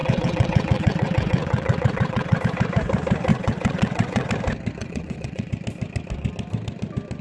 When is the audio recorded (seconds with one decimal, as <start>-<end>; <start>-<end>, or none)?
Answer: 2.4-3.3; 4.3-4.8; 5.5-7.2